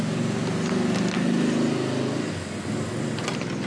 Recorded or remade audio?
recorded